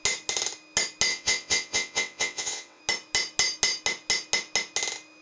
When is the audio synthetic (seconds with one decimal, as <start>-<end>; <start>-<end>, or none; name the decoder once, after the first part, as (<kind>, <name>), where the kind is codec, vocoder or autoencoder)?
1.1-2.8 (vocoder, WaveNeXt)